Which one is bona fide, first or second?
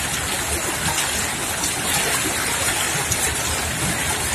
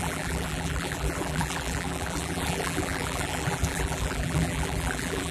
first